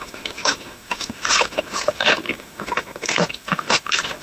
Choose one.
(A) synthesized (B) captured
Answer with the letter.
A